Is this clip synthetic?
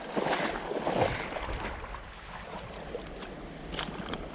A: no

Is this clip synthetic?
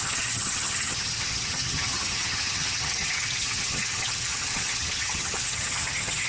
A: yes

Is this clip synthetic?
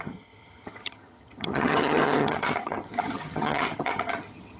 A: yes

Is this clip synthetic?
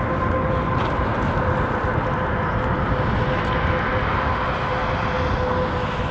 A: no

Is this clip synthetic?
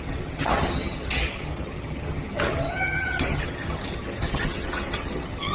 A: yes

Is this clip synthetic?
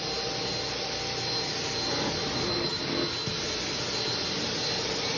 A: no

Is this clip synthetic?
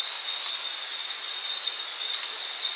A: no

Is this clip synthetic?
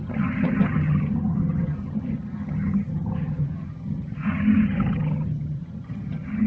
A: yes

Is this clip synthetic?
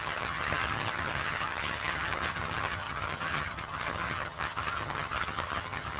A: yes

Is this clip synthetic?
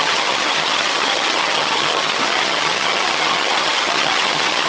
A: yes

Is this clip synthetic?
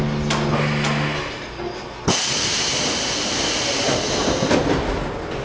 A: no